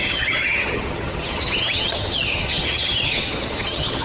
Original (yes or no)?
no